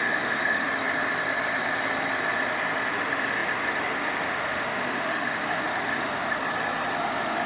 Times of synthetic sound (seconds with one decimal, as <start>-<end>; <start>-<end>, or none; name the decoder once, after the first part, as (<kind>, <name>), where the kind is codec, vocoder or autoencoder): 0.0-0.7 (autoencoder, DAC-VAE); 2.9-6.4; 7.0-7.5